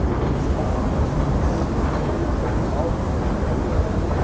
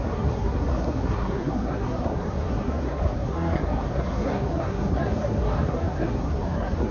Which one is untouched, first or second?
first